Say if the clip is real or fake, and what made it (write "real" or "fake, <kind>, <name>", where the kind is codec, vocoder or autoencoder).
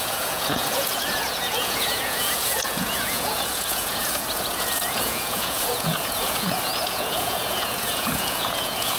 fake, vocoder, Vocos